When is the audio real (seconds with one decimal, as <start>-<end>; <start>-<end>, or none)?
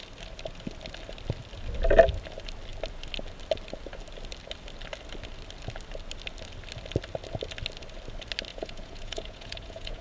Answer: 0.0-8.5